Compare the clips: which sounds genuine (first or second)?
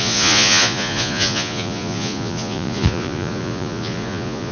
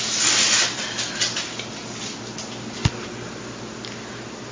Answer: second